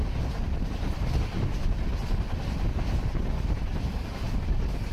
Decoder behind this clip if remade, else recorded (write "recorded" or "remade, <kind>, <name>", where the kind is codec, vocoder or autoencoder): recorded